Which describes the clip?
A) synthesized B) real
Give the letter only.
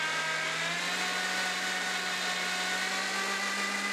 B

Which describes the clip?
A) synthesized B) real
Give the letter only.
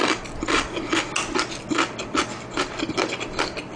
B